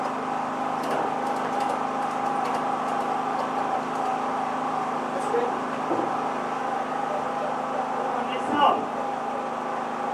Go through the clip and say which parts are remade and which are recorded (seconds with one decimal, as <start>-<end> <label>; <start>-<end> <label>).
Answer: 0.0-10.1 recorded

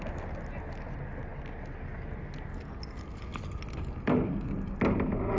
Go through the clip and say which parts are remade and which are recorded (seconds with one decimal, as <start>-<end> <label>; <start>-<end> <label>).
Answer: 0.0-5.4 recorded